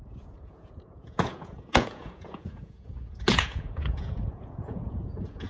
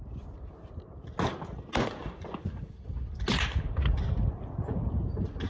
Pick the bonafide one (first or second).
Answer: second